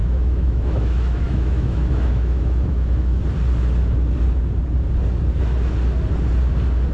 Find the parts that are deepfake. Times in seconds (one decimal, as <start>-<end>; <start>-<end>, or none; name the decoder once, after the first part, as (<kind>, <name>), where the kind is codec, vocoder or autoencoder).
0.0-3.2 (autoencoder, DAC-VAE)